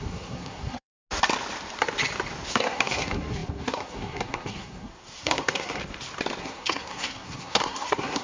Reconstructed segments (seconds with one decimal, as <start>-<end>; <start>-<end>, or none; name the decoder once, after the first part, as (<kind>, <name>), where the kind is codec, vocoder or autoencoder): 0.0-0.9 (codec, SNAC); 2.5-5.8; 6.4-8.2